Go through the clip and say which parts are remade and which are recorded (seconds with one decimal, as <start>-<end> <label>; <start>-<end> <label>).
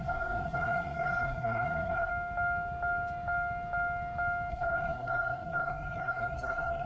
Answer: 0.0-2.1 remade; 2.1-4.5 recorded; 4.5-6.9 remade